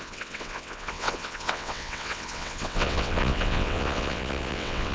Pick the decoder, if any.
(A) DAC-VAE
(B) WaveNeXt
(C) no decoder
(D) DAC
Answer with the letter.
B